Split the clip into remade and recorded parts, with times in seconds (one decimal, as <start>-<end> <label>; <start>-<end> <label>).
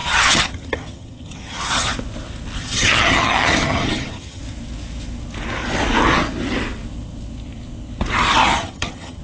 0.0-1.9 remade; 1.9-2.6 recorded; 2.6-4.4 remade; 4.4-8.5 recorded; 8.5-9.2 remade